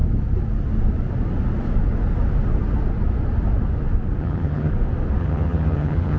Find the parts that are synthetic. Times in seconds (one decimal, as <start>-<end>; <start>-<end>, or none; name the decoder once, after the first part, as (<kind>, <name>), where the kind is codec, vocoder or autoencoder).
4.2-4.7 (vocoder, HiFi-GAN); 5.2-6.2